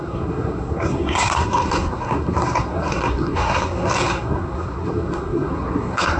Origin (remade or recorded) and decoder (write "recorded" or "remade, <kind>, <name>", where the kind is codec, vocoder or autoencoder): remade, codec, SNAC